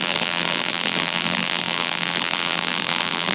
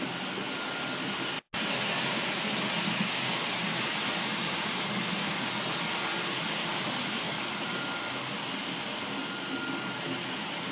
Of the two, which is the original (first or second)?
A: second